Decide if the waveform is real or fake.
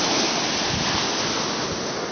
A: real